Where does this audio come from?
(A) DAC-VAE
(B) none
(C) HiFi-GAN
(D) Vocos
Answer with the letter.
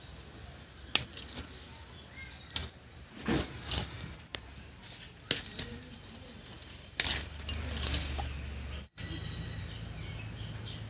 B